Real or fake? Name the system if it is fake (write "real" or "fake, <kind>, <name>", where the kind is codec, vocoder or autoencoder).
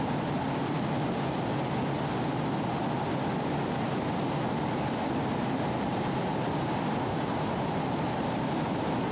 real